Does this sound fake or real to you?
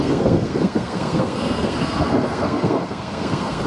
fake